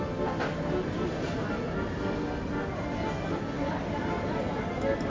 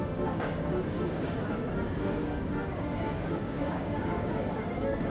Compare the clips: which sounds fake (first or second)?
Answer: second